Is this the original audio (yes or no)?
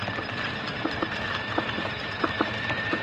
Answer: yes